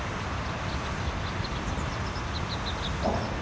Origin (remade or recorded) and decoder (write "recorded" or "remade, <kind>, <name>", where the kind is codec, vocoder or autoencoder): recorded